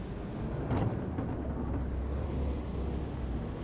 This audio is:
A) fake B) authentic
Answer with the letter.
B